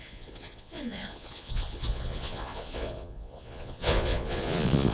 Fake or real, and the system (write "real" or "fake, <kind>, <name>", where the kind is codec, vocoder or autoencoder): fake, vocoder, Vocos